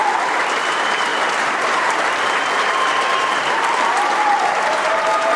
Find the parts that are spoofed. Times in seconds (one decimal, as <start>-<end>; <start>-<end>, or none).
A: 0.5-5.4